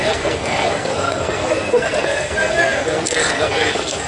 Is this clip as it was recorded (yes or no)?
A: no